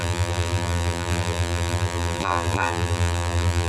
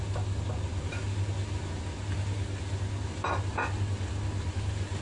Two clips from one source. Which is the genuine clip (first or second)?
second